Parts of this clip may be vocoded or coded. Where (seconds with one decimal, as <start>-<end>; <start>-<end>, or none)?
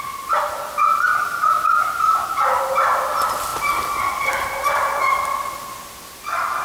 none